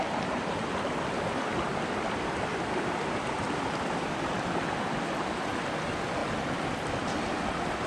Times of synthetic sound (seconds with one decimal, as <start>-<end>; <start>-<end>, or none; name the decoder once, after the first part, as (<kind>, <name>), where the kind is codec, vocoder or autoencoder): none